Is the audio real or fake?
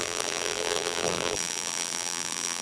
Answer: fake